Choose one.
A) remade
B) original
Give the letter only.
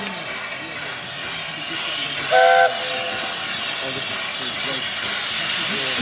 B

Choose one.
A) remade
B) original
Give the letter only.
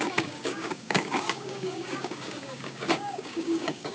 A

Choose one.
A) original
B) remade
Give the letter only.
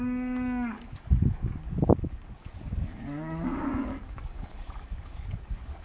B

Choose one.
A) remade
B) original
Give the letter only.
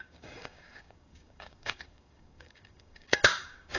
A